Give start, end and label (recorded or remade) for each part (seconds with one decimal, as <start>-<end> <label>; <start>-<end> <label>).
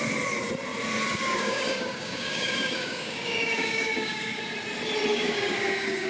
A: 0.0-1.1 recorded; 1.1-4.4 remade; 4.4-5.1 recorded; 5.1-6.1 remade